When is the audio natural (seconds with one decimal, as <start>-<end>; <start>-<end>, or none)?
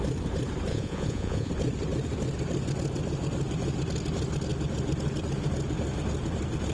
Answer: 0.0-0.7; 1.5-6.7